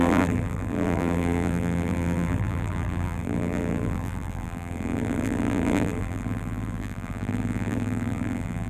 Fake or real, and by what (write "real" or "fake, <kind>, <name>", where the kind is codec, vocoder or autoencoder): fake, vocoder, BigVGAN v2